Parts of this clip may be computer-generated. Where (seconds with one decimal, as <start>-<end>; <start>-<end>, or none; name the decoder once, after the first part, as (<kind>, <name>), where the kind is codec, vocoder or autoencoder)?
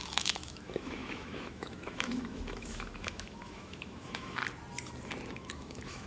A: 0.0-4.4 (autoencoder, DAC-VAE); 5.3-6.1